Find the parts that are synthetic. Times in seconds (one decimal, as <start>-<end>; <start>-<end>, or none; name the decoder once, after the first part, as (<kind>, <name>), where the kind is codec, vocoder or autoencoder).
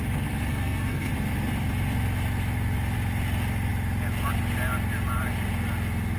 0.5-1.1 (codec, SNAC)